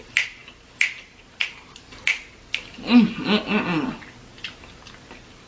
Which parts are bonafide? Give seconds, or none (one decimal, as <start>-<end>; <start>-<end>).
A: 0.0-5.5